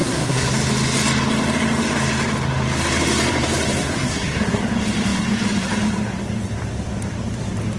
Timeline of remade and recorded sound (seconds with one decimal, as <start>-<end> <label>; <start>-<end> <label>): 0.0-0.5 remade; 0.5-3.8 recorded; 3.8-4.6 remade; 4.6-7.8 recorded